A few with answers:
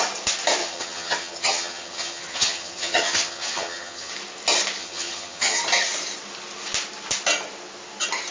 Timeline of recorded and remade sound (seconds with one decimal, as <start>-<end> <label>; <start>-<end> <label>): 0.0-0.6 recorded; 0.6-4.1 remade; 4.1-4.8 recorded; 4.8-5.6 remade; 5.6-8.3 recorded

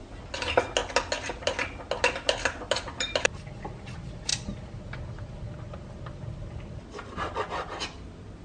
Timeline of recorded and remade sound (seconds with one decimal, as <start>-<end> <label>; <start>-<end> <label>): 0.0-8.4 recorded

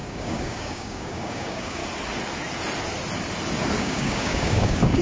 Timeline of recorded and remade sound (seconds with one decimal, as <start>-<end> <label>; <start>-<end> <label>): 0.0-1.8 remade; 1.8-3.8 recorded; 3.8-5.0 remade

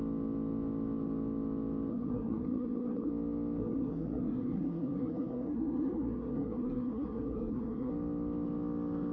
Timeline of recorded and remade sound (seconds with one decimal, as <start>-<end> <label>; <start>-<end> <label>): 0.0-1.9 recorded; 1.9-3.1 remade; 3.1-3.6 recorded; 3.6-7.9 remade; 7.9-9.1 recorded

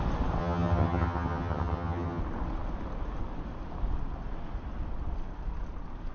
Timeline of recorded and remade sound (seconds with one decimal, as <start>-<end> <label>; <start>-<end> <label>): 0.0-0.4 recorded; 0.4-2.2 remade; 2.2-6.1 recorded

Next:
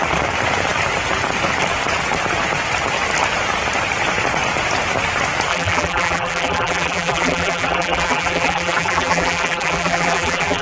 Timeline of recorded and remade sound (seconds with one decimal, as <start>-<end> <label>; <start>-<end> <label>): 0.0-5.5 recorded; 5.5-10.6 remade

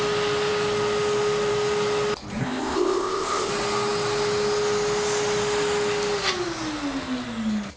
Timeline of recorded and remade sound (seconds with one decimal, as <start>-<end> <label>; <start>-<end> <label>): 0.0-2.4 recorded; 2.4-3.5 remade; 3.5-7.8 recorded

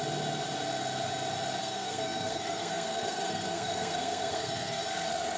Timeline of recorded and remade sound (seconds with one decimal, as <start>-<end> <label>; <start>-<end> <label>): 0.0-1.6 recorded; 1.6-4.8 remade; 4.8-5.4 recorded